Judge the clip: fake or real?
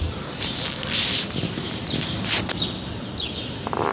real